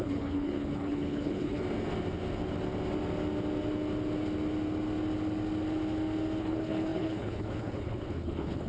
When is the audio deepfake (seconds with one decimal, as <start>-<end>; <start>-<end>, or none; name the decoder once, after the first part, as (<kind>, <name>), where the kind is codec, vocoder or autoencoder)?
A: 0.0-1.6 (codec, HILCodec); 6.4-8.7